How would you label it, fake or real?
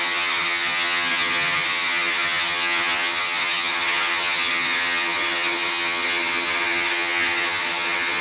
fake